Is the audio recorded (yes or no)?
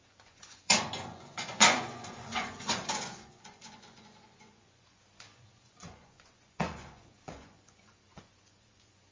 no